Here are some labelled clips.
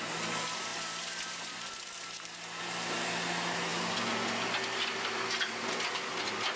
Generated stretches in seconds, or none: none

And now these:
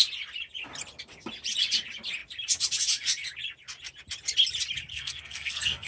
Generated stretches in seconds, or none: 4.9-5.9 (codec, SNAC)

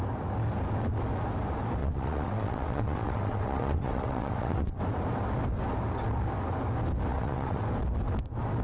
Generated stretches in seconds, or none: 1.8-4.8 (vocoder, WaveNeXt); 7.1-7.6

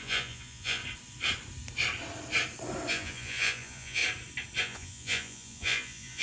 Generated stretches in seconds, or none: 0.0-0.8 (vocoder, Vocos); 2.9-4.0; 4.6-6.2

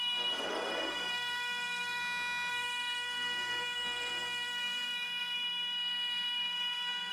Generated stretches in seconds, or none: 0.0-2.0 (codec, SNAC); 2.5-7.1